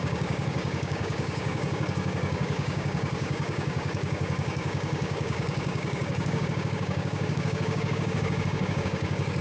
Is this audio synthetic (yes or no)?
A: yes